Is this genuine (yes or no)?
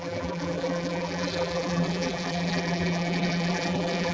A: no